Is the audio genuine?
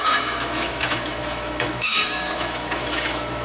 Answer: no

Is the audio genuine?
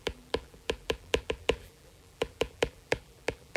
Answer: no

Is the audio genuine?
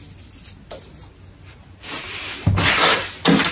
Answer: yes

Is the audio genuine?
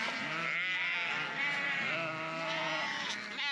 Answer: yes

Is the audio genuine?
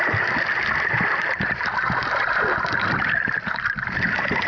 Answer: yes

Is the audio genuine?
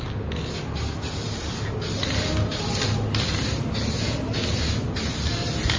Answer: yes